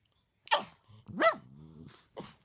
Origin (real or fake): real